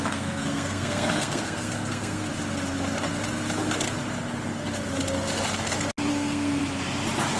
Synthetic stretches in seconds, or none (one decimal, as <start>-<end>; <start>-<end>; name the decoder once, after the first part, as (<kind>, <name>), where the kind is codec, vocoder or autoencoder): 0.0-2.3 (codec, SNAC); 6.1-6.6